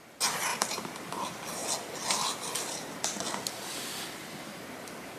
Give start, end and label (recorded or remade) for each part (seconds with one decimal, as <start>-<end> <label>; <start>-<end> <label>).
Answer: 0.0-0.5 recorded; 0.5-1.1 remade; 1.1-5.2 recorded